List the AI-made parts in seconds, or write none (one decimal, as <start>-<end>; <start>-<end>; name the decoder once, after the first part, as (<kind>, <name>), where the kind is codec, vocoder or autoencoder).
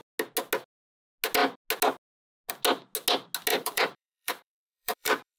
3.5-5.4 (vocoder, BigVGAN v2)